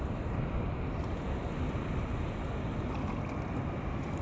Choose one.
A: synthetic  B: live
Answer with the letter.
B